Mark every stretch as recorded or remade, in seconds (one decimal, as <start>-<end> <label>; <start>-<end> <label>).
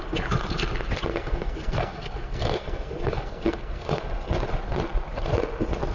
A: 0.0-1.1 recorded; 1.1-4.0 remade; 4.0-5.9 recorded